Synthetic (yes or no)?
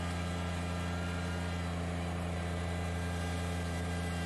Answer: no